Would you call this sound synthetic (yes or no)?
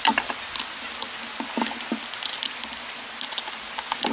no